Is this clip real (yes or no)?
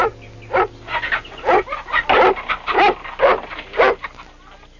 yes